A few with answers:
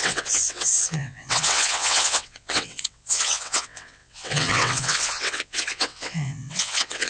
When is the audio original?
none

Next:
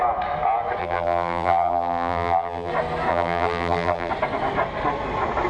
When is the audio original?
0.0-0.8; 2.7-3.1; 4.1-5.5

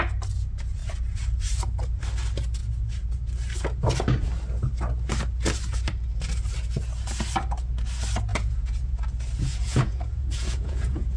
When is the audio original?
0.0-8.3; 8.9-9.5

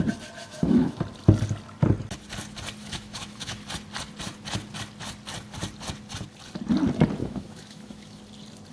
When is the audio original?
0.0-0.4; 1.0-2.8; 3.6-7.2; 8.2-8.7

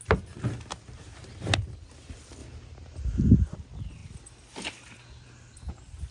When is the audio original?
0.0-6.1